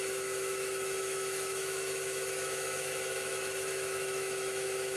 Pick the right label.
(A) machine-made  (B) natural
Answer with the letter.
A